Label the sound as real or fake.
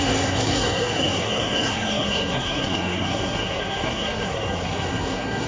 fake